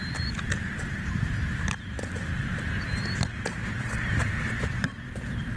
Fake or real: fake